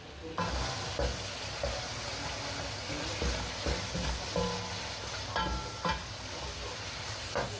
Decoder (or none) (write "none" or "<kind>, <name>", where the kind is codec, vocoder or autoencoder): none